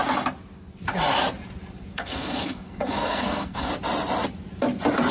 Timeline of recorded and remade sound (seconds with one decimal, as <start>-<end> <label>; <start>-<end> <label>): 0.0-1.9 recorded; 1.9-3.7 remade; 3.7-5.1 recorded